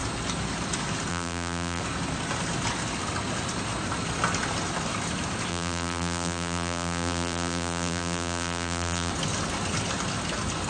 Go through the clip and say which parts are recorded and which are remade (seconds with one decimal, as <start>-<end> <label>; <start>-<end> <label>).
0.0-1.1 recorded; 1.1-1.8 remade; 1.8-5.5 recorded; 5.5-9.1 remade; 9.1-10.7 recorded